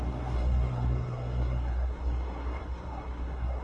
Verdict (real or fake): fake